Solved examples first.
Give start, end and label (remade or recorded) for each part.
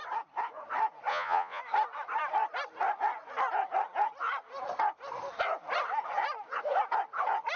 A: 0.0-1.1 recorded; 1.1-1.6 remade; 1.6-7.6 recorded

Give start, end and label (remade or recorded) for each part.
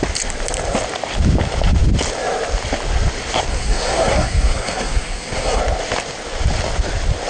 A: 0.0-3.5 recorded; 3.5-5.6 remade; 5.6-7.3 recorded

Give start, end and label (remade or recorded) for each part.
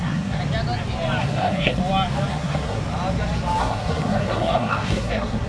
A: 0.0-0.4 remade; 0.4-1.2 recorded; 1.2-1.8 remade; 1.8-2.3 recorded; 2.3-2.8 remade; 2.8-3.6 recorded; 3.6-5.5 remade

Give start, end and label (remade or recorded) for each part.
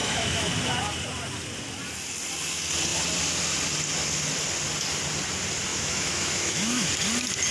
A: 0.0-0.5 remade; 0.5-5.7 recorded; 5.7-6.9 remade; 6.9-7.5 recorded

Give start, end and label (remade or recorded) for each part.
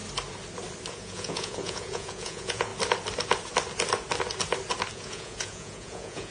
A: 0.0-0.9 recorded; 0.9-2.7 remade; 2.7-4.9 recorded; 4.9-6.3 remade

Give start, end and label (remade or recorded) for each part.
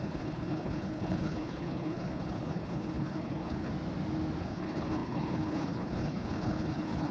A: 0.0-3.7 remade; 3.7-4.4 recorded; 4.4-7.1 remade